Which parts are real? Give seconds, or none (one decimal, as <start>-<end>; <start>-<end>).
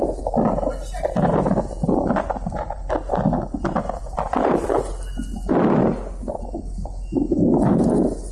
0.0-5.8; 6.4-8.3